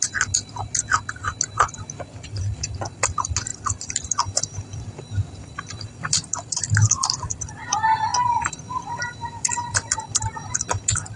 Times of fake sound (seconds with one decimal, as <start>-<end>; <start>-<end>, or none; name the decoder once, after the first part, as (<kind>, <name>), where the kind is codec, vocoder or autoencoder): 3.5-7.5 (vocoder, BigVGAN v2); 8.1-9.9